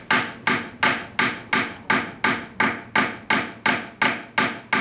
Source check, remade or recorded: recorded